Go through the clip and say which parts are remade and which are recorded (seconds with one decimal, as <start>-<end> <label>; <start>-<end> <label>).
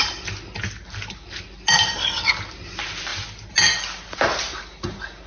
0.0-5.3 recorded